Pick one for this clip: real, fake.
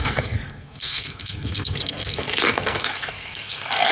fake